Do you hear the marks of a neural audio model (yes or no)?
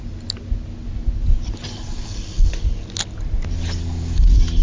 no